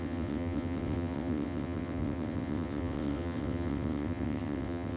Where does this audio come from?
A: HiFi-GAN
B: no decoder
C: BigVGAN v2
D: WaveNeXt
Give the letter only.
D